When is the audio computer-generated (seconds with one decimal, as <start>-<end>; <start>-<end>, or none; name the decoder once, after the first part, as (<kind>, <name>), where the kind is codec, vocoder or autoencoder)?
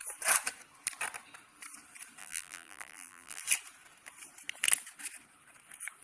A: 2.2-3.4 (vocoder, BigVGAN v2)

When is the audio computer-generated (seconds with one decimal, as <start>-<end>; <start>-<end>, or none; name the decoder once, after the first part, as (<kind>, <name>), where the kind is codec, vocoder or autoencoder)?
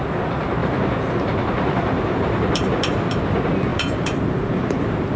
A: 0.6-3.2 (vocoder, BigVGAN v2); 3.7-4.8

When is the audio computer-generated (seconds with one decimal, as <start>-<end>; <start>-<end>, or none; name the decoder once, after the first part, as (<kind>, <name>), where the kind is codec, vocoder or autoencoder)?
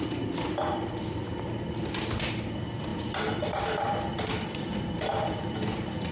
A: 2.9-6.1 (vocoder, BigVGAN v2)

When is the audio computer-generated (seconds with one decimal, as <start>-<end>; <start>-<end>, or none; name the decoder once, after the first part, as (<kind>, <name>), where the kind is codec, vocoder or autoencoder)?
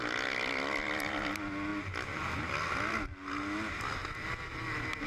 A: none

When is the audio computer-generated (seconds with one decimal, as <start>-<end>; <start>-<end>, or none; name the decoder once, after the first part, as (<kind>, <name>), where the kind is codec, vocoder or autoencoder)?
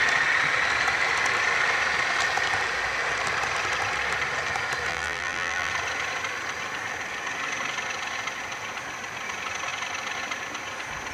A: 4.9-5.7 (vocoder, BigVGAN v2)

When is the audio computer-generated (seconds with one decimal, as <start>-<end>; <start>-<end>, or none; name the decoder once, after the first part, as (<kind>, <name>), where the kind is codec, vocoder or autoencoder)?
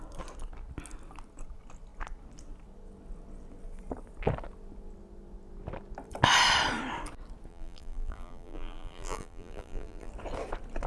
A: 7.5-10.1 (vocoder, BigVGAN v2)